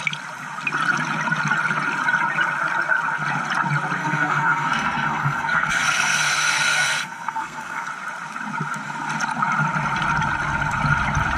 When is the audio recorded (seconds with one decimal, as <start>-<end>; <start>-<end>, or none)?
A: 0.0-4.0; 7.9-11.4